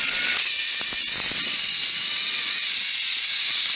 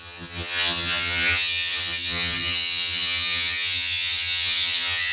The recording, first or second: first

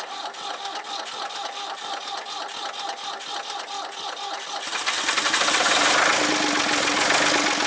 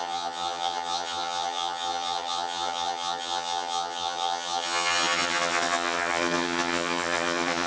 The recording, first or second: first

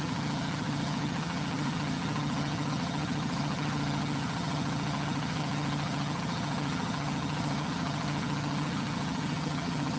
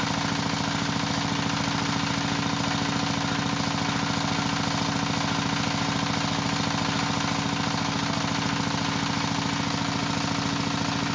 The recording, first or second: second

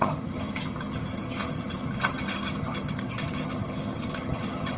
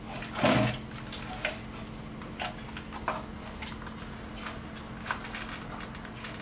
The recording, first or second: second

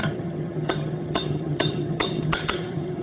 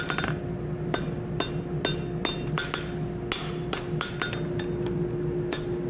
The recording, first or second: second